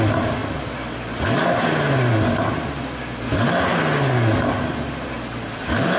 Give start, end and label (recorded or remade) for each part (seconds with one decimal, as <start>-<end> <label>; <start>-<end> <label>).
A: 0.0-6.0 recorded